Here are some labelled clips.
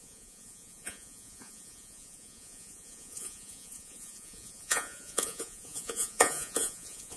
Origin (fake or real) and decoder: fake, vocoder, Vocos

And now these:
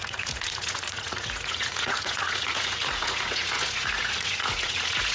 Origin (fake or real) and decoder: fake, vocoder, Vocos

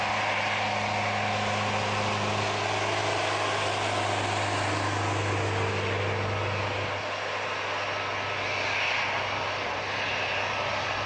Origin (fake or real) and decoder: real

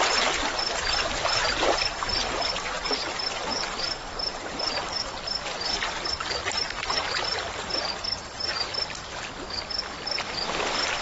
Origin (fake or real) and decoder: real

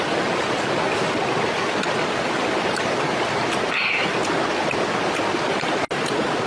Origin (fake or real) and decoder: real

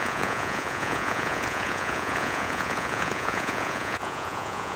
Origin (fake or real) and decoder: fake, vocoder, Vocos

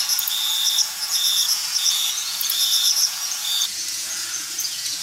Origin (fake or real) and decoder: fake, vocoder, Vocos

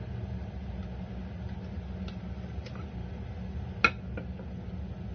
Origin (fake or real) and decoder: real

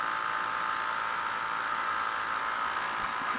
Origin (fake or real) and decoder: real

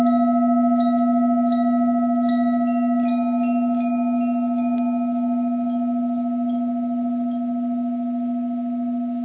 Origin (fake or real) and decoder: real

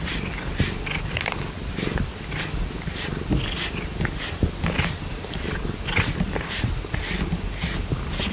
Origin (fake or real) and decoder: real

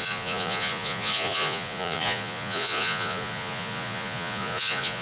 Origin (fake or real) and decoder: fake, vocoder, Vocos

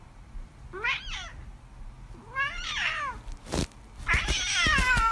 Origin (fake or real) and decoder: real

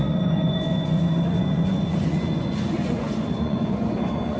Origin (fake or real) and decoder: fake, vocoder, Vocos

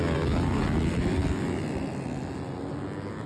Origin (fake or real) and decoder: real